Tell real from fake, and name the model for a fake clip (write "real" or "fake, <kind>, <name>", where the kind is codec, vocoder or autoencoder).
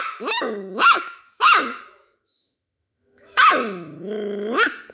fake, autoencoder, DAC-VAE